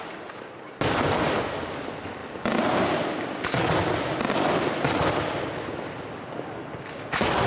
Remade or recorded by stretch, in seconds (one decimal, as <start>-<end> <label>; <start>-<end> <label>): 0.0-7.5 recorded